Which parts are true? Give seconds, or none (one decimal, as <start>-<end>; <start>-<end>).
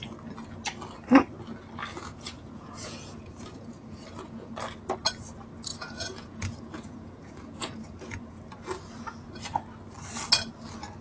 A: 0.0-1.9; 4.5-5.7; 8.4-11.0